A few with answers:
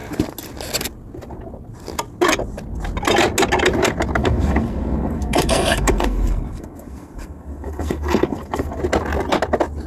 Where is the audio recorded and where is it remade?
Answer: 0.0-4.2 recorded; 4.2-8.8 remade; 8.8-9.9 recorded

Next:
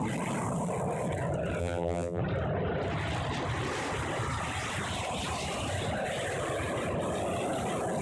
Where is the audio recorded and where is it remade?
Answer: 0.0-1.6 recorded; 1.6-2.2 remade; 2.2-8.0 recorded

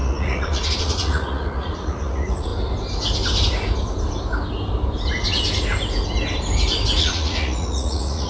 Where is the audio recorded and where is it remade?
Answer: 0.0-2.5 remade; 2.5-7.0 recorded; 7.0-8.3 remade

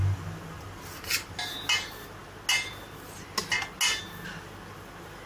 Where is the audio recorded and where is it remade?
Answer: 0.0-5.3 recorded

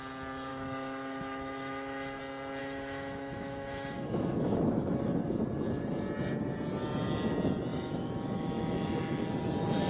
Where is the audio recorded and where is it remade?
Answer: 0.0-0.5 recorded; 0.5-2.2 remade; 2.2-2.6 recorded; 2.6-5.0 remade; 5.0-7.7 recorded; 7.7-9.0 remade; 9.0-9.9 recorded

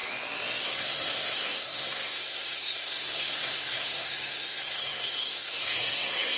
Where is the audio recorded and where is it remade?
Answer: 0.0-0.6 recorded; 0.6-6.4 remade